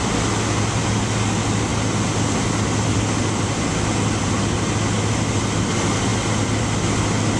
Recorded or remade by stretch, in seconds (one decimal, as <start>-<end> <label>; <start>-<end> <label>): 0.0-7.4 recorded